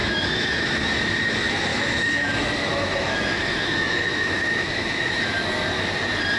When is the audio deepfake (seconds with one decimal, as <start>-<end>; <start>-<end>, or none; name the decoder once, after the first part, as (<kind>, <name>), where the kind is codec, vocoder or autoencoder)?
0.0-0.9 (autoencoder, DAC-VAE); 1.7-2.3; 2.7-5.4